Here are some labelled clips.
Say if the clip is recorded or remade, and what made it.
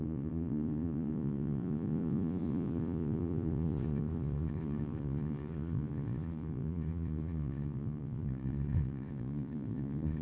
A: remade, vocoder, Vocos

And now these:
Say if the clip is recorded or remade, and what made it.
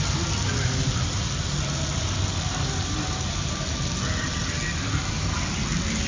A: recorded